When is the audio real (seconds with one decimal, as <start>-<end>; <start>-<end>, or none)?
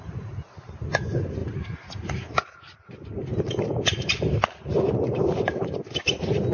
0.0-1.4; 2.9-3.3; 4.1-4.7; 5.8-6.5